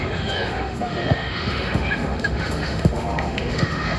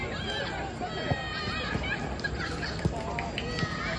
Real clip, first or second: second